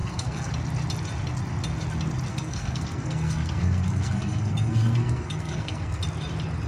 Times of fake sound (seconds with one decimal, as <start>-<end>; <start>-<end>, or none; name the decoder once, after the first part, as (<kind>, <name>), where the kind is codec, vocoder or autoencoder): 0.0-0.5 (codec, SNAC); 2.3-6.0